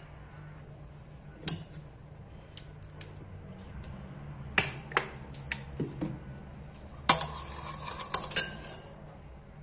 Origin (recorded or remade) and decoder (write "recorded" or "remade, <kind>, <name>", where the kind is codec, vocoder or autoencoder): recorded